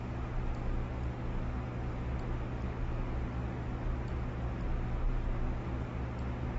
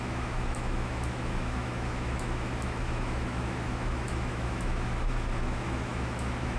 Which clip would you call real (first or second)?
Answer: first